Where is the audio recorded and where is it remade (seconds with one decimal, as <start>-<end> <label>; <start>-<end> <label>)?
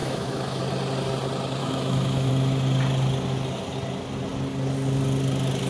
0.0-0.6 remade; 0.6-1.6 recorded; 1.6-2.3 remade; 2.3-5.7 recorded